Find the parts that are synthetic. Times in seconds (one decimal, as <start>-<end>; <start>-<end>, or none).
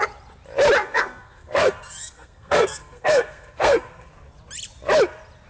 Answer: 0.8-4.1